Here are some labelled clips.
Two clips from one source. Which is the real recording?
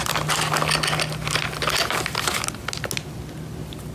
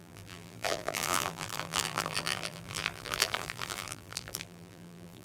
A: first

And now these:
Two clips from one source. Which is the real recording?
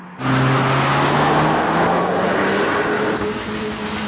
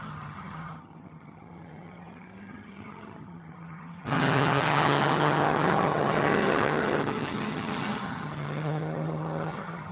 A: first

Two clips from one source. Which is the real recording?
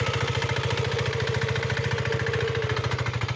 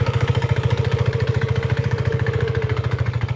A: first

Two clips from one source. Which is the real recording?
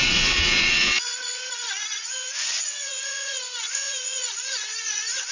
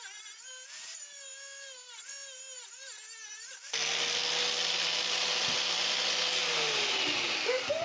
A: second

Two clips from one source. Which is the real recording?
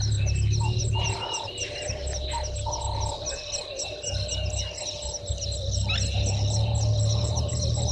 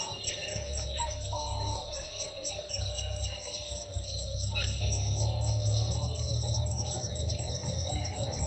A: first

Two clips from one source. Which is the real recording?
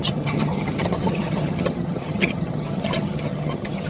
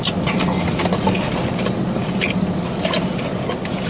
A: second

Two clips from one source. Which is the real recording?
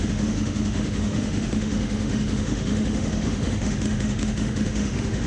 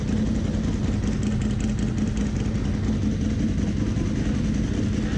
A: second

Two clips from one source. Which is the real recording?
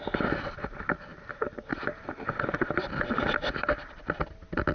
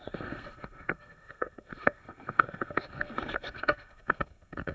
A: first